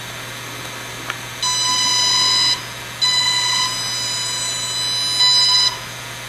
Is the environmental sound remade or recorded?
recorded